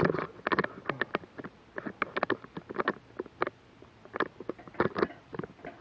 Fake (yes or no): no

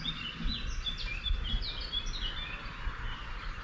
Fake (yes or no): no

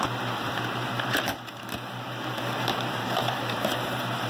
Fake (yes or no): yes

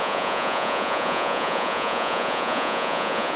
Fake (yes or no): yes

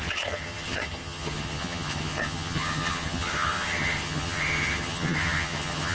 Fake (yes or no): yes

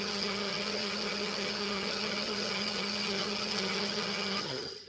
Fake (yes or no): yes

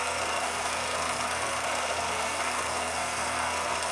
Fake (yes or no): yes